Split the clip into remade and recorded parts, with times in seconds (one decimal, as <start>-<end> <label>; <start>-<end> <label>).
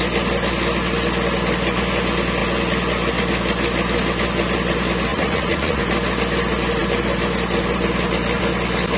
0.0-5.1 recorded; 5.1-5.8 remade; 5.8-9.0 recorded